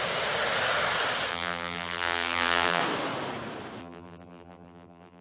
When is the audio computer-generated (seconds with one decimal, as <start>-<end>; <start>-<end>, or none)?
1.3-2.8; 3.8-5.2